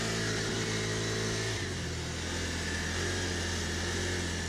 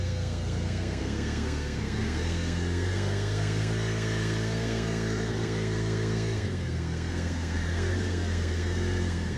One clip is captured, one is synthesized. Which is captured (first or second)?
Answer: first